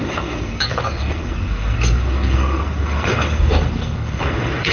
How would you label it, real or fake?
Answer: fake